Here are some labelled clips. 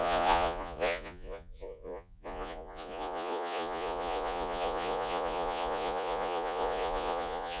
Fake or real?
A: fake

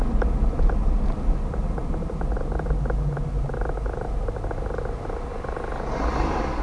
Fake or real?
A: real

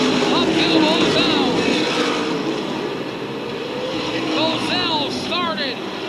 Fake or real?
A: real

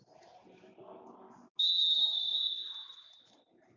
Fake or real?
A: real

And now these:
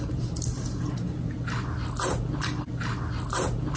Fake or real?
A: real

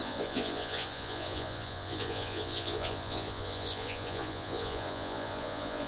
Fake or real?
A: fake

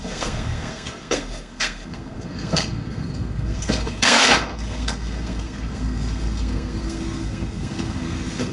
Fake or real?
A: fake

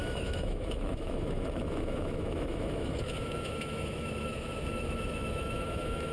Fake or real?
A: fake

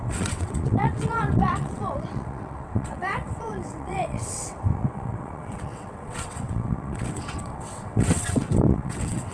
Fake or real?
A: fake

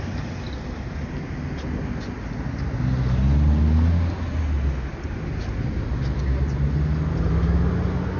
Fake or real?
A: real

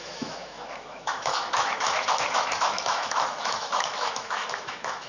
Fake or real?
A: fake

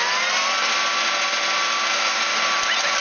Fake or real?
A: real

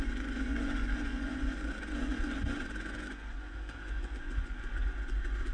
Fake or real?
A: fake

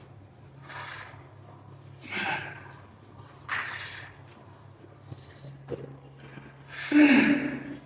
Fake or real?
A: real